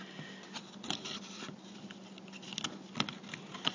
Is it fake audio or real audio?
real